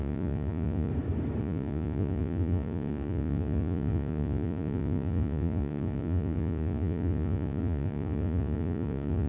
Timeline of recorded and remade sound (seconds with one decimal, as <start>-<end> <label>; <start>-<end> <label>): 0.0-0.9 remade; 0.9-1.4 recorded; 1.4-9.3 remade